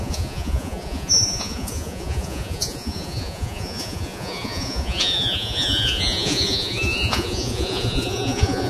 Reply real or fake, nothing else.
fake